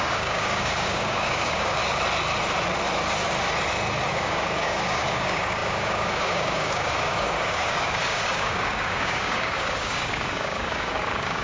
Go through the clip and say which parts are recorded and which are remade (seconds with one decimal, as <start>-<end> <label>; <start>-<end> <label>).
0.0-1.8 remade; 1.8-4.1 recorded; 4.1-11.4 remade